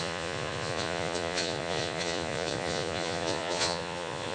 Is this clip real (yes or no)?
no